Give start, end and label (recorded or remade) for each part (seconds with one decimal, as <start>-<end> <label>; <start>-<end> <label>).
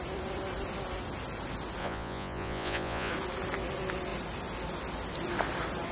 0.0-1.8 recorded; 1.8-3.1 remade; 3.1-5.9 recorded